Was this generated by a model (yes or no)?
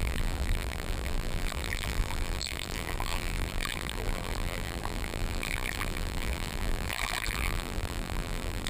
yes